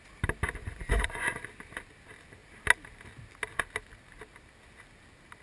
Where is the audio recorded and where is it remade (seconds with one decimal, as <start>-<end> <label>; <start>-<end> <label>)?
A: 0.0-0.6 recorded; 0.6-1.4 remade; 1.4-5.4 recorded